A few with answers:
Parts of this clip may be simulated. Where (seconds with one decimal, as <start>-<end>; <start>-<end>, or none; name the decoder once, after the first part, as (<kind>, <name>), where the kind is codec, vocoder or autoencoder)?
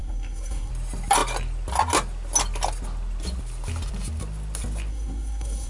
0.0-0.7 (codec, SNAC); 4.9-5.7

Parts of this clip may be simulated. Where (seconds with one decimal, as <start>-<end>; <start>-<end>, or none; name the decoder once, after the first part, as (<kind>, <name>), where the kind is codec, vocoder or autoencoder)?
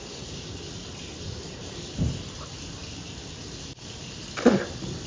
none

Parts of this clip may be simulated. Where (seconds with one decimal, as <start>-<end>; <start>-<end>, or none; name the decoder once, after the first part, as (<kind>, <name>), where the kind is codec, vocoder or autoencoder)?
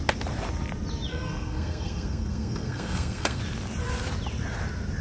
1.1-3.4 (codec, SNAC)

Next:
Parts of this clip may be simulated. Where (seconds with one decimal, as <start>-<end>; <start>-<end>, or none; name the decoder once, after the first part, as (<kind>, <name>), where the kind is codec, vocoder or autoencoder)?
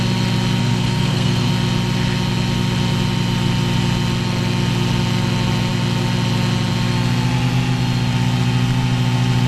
0.6-1.5 (codec, SNAC)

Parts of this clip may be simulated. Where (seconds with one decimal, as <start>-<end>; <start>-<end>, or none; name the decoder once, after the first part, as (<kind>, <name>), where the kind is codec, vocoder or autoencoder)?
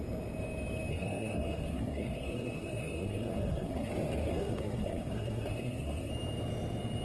0.9-3.9 (codec, SNAC); 4.3-6.1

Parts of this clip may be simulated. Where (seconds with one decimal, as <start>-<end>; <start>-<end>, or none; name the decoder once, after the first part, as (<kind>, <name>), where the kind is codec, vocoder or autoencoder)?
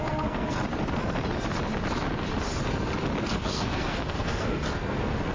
0.0-0.6 (codec, SNAC); 3.2-5.3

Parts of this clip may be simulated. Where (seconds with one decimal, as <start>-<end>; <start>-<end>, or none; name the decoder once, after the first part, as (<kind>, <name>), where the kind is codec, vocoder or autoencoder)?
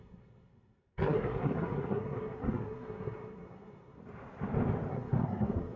0.0-4.0 (codec, SNAC); 4.9-5.8